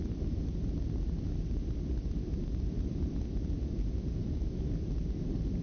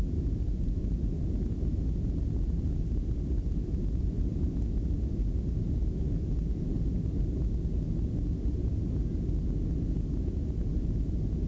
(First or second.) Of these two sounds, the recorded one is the second